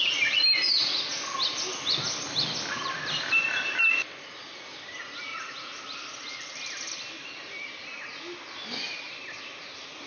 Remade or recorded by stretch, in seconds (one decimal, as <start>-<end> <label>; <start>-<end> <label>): 0.0-5.3 recorded; 5.3-5.8 remade; 5.8-10.1 recorded